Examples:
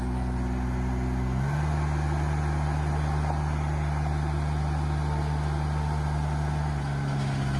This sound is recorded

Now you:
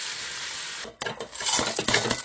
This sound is recorded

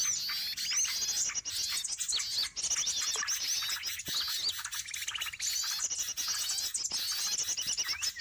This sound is recorded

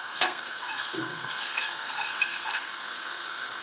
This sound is remade